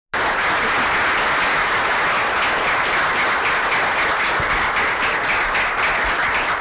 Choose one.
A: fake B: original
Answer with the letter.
B